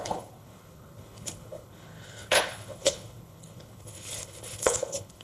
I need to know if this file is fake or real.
fake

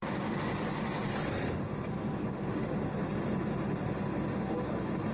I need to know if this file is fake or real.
real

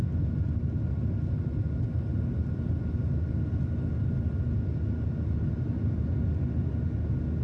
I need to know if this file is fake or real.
real